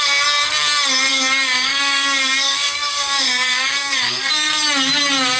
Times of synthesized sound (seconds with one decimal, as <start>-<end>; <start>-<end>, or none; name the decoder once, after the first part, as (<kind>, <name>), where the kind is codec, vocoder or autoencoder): 1.1-4.3 (codec, DAC)